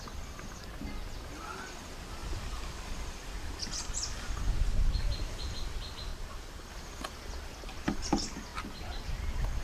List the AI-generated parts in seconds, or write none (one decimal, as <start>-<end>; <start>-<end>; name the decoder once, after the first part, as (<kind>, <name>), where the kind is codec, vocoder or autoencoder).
2.2-4.8 (vocoder, BigVGAN v2); 6.1-6.7; 8.5-9.6